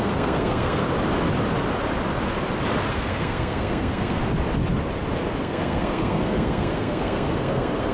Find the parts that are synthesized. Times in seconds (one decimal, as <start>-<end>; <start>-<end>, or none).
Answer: 0.0-0.8; 2.9-4.2; 5.4-7.9